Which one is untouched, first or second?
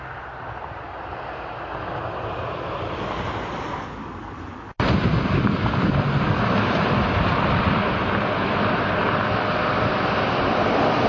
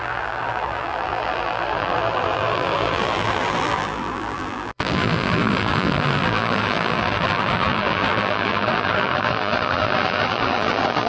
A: first